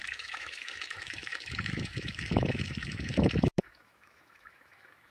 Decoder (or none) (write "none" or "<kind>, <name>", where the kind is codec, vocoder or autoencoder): autoencoder, DAC-VAE